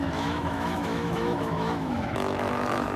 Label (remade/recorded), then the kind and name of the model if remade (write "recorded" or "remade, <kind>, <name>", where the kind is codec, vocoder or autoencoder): remade, autoencoder, DAC-VAE